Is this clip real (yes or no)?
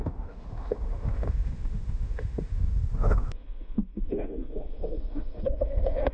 no